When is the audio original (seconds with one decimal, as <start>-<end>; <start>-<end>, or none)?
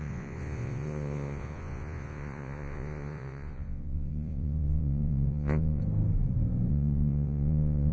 5.8-6.7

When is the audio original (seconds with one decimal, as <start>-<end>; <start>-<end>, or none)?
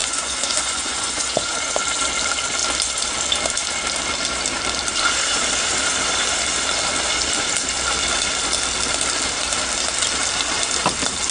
1.8-11.3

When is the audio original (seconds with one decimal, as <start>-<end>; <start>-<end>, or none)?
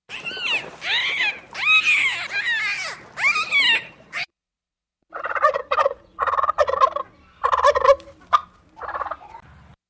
0.0-3.8; 6.8-9.9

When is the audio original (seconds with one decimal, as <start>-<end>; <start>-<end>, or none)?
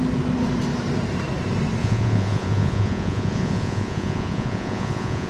0.0-1.8